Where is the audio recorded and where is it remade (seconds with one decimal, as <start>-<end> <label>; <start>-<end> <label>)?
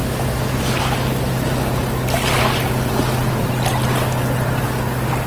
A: 0.0-5.3 recorded